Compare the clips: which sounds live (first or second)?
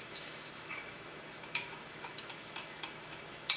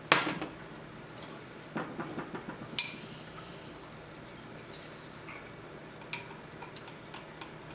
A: second